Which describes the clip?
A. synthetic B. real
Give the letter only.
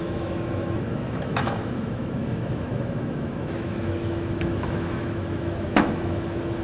A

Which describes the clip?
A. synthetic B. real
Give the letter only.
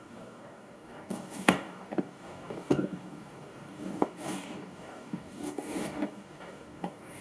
A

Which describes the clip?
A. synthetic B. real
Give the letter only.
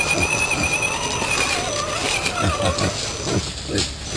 B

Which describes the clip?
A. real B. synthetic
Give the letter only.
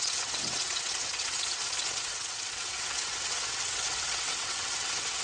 B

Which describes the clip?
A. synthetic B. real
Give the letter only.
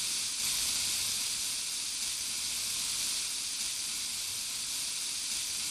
B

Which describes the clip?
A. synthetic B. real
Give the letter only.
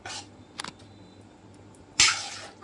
B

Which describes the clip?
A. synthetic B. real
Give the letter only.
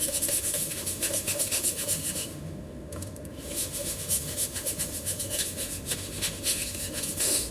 A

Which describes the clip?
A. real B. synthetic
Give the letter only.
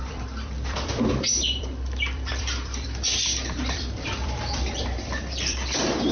B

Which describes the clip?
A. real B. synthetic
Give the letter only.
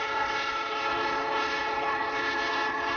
B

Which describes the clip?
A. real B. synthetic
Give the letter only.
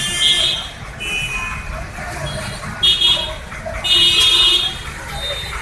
A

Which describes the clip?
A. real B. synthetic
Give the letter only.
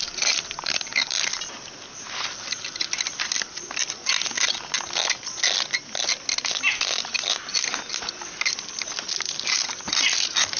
A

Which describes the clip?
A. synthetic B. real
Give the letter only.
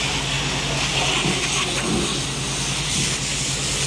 B